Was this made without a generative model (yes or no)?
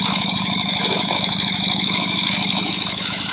no